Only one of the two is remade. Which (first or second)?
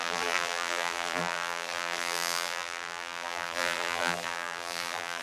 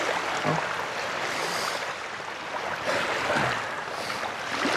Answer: first